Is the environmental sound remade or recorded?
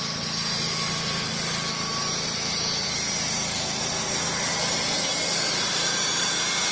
recorded